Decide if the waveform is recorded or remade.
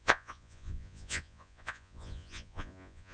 remade